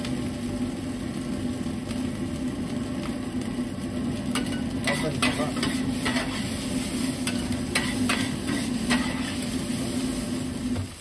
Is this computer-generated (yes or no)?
no